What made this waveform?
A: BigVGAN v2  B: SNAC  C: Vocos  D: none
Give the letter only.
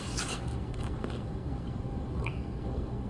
B